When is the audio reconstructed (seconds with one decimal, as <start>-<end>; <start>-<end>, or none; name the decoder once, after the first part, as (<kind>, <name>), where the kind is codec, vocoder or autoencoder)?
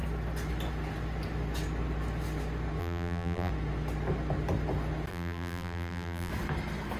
2.8-3.5 (vocoder, BigVGAN v2); 5.1-6.3